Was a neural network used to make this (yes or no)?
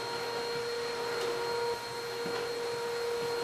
no